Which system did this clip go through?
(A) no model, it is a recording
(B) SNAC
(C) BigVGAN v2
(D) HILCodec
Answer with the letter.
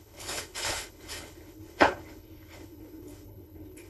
D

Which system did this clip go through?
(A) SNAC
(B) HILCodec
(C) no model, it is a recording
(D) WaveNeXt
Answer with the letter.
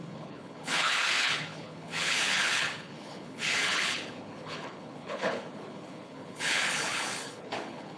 B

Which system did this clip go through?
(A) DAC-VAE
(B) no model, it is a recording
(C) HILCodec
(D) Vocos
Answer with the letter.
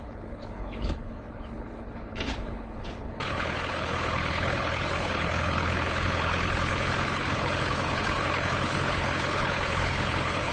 C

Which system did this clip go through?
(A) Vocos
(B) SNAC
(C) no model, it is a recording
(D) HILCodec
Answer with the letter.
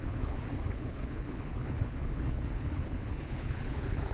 D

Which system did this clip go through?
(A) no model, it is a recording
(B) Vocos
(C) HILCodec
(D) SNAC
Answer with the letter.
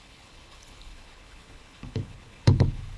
C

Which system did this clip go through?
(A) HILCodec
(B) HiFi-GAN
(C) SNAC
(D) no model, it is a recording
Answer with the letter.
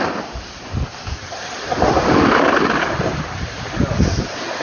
D